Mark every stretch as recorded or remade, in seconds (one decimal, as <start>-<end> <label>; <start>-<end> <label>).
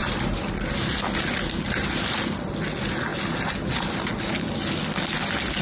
0.0-5.6 recorded